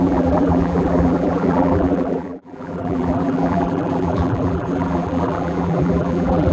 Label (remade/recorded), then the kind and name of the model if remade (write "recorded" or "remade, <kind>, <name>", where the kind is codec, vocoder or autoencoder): remade, vocoder, BigVGAN v2